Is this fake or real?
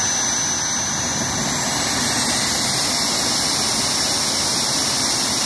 real